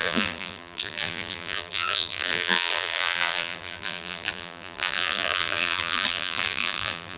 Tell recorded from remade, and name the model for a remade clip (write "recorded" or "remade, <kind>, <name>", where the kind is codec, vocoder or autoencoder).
remade, vocoder, BigVGAN v2